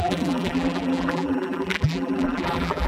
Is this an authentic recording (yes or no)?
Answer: no